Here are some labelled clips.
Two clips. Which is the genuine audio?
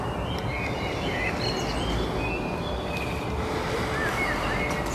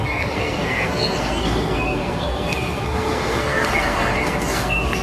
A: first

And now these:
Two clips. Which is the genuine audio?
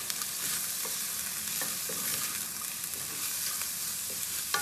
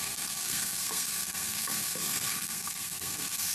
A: first